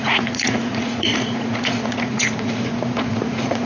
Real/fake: fake